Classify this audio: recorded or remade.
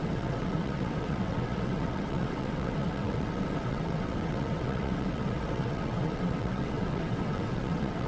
remade